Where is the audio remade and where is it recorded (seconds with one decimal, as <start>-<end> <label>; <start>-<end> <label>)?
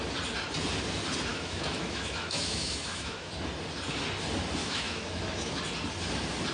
0.0-1.3 recorded; 1.3-3.3 remade; 3.3-4.6 recorded; 4.6-5.6 remade; 5.6-6.5 recorded